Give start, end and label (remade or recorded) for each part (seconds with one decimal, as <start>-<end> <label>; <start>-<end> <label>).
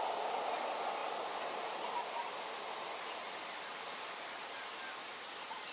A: 0.0-5.7 recorded